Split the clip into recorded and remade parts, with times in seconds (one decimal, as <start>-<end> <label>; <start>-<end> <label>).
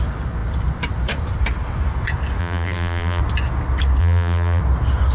0.0-2.4 recorded; 2.4-3.2 remade; 3.2-4.0 recorded; 4.0-4.6 remade; 4.6-5.1 recorded